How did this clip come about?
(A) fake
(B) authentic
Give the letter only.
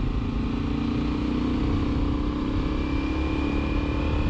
B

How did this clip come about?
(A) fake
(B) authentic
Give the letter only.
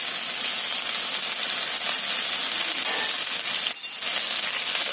B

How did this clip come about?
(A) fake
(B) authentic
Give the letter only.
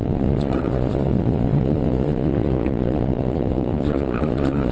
A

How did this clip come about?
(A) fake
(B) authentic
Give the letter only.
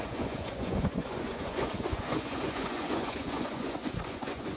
A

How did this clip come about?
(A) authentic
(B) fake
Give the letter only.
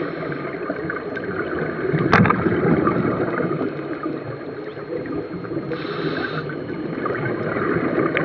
A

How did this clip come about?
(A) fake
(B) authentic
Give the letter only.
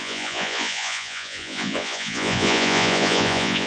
A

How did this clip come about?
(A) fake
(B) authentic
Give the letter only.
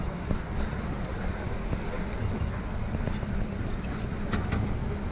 B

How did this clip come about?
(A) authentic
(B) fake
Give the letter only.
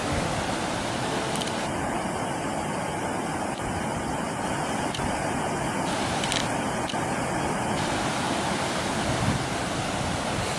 A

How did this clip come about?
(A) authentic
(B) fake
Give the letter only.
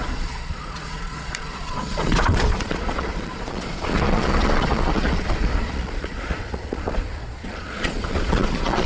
B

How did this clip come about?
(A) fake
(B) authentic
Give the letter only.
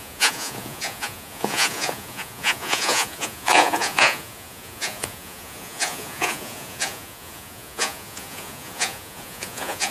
A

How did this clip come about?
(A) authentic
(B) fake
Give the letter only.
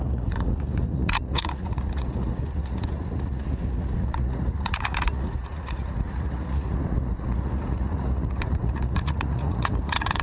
B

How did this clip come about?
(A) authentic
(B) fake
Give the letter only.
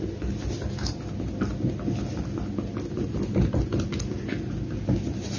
A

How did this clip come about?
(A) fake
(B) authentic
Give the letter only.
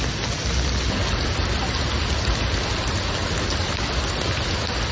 B